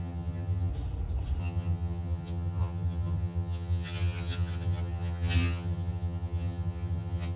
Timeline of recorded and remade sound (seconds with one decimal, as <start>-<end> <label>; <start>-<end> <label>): 0.0-0.7 remade; 0.7-1.4 recorded; 1.4-7.4 remade